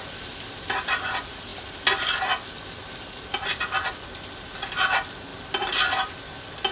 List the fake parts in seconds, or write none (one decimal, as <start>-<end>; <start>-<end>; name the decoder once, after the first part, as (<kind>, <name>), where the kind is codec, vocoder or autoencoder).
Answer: none